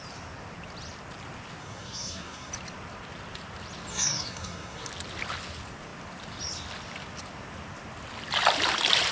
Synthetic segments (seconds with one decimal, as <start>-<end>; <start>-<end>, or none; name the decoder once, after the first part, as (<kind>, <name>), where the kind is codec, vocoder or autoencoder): 1.6-2.5 (codec, SNAC); 3.9-4.9